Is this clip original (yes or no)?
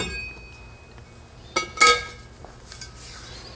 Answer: yes